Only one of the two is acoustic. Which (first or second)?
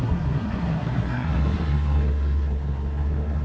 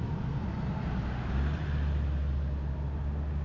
second